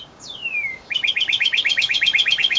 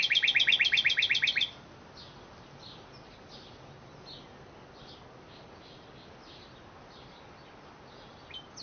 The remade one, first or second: first